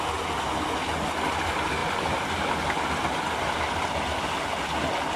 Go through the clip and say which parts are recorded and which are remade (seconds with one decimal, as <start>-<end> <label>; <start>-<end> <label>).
0.0-5.2 recorded